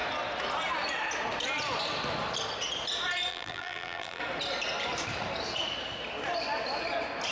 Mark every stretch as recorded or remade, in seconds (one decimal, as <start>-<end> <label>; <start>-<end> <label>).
0.0-3.3 recorded; 3.3-4.2 remade; 4.2-7.3 recorded